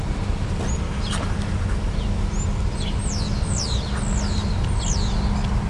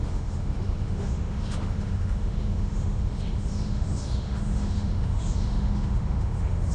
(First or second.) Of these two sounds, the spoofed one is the second